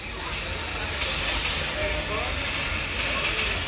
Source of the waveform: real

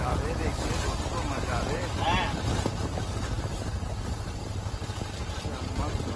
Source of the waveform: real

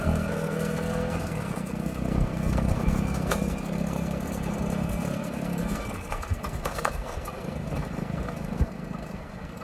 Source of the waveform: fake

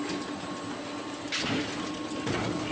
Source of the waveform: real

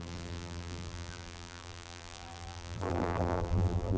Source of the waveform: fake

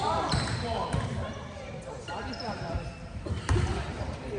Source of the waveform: fake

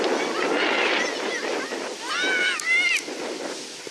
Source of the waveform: real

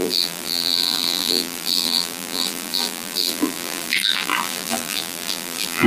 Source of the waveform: fake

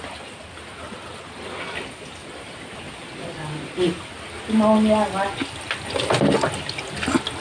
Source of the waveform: real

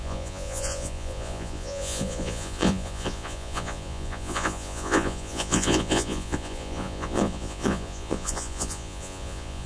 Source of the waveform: fake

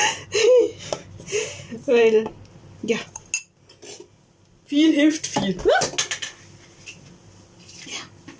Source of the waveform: real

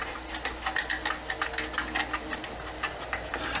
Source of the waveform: real